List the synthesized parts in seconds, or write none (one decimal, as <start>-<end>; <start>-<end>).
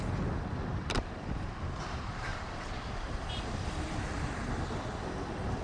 0.7-1.5; 2.3-4.5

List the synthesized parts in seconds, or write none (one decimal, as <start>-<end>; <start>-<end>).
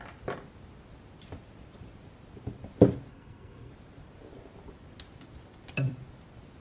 3.1-3.7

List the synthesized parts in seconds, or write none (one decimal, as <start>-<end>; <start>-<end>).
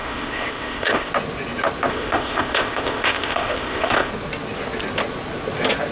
0.0-1.1; 1.9-4.1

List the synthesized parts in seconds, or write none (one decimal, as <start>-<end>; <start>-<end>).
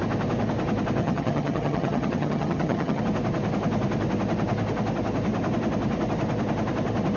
1.0-3.0